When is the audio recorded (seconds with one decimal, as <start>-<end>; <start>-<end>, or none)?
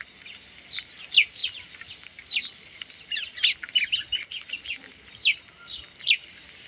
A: 0.0-6.7